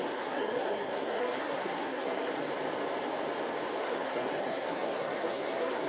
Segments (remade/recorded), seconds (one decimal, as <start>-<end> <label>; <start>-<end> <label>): 0.0-2.3 remade; 2.3-3.8 recorded; 3.8-5.9 remade